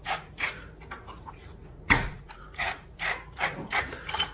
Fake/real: fake